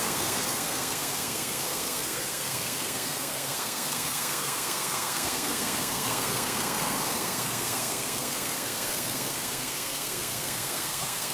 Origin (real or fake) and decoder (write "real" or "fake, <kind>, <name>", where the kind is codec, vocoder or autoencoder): fake, codec, SNAC